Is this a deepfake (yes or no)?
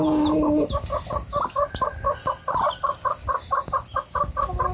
no